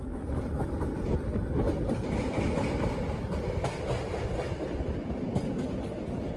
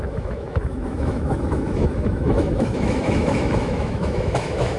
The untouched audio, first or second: first